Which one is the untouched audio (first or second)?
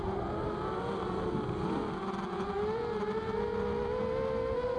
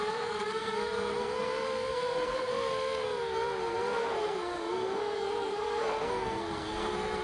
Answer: first